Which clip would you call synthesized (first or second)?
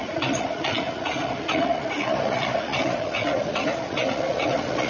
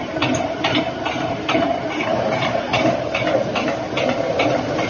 first